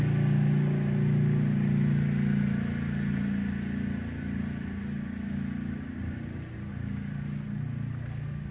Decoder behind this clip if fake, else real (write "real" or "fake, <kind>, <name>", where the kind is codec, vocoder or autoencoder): real